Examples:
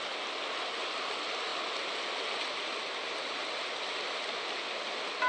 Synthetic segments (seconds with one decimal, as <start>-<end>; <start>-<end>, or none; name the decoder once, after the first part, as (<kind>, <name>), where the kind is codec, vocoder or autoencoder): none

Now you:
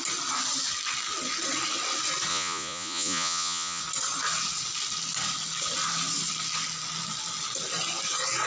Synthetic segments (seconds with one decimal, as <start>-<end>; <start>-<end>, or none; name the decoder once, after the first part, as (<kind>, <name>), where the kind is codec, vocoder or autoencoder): 2.3-3.8 (vocoder, Vocos)

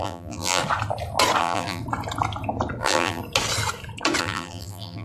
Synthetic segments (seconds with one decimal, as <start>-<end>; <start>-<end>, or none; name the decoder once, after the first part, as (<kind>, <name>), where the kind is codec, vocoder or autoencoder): 0.0-0.6 (vocoder, BigVGAN v2); 1.4-1.8; 2.8-3.2; 4.2-5.0